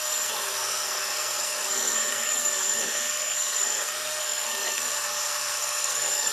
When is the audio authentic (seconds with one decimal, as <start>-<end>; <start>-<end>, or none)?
none